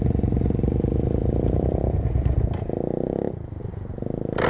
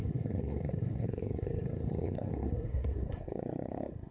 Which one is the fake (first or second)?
second